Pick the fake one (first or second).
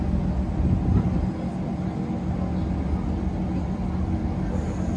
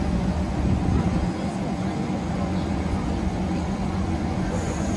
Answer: second